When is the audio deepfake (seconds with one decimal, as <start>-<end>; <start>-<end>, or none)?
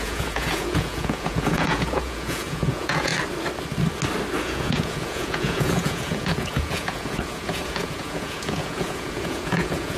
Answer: 0.0-3.1; 4.4-10.0